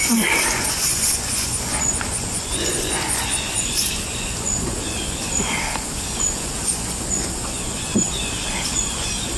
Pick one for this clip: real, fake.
fake